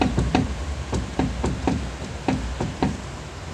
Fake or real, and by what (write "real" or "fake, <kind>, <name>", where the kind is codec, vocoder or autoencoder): fake, vocoder, BigVGAN v2